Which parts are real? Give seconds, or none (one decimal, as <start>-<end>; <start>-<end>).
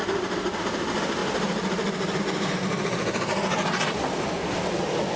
0.0-1.2; 2.2-5.2